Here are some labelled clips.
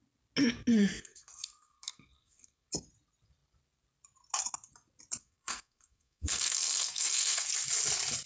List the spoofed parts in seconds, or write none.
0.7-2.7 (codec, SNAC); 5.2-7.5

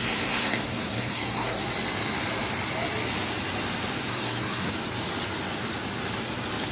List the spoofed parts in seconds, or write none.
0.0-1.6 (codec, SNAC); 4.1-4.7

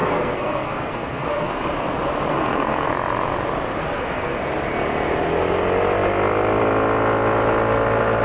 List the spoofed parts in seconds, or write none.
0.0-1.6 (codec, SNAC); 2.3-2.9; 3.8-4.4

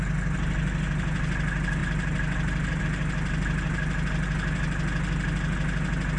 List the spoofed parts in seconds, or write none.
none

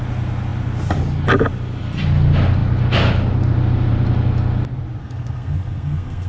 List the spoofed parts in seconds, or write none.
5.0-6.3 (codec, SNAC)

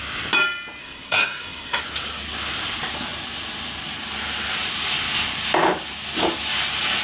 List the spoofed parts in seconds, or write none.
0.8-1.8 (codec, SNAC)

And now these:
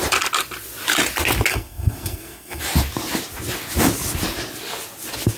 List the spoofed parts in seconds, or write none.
1.5-2.6 (codec, SNAC)